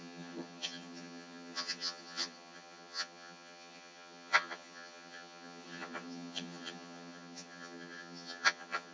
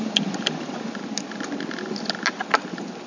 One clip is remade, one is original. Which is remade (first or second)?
first